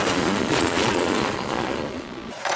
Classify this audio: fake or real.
fake